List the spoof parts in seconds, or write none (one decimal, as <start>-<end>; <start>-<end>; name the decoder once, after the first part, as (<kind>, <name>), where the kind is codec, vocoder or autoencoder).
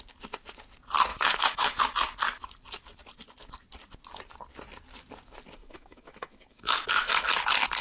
1.1-1.8 (autoencoder, DAC-VAE); 5.6-7.1